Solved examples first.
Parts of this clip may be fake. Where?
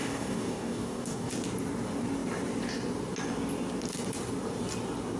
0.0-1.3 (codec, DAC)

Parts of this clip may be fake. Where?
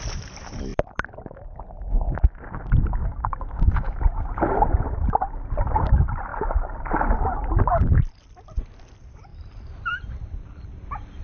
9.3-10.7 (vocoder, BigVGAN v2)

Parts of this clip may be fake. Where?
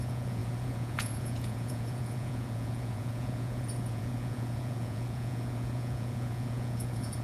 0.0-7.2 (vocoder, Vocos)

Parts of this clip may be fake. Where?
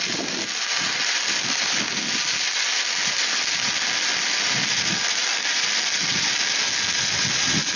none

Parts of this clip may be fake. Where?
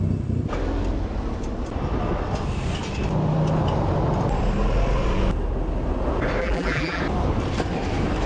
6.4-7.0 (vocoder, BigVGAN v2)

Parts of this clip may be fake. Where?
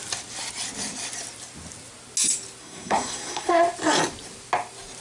2.6-3.5 (codec, SNAC)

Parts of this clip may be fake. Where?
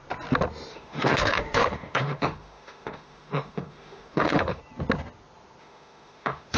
0.7-4.6 (autoencoder, DAC-VAE); 5.6-6.6